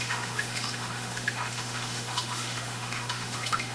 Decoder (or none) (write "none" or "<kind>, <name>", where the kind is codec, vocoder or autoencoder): autoencoder, DAC-VAE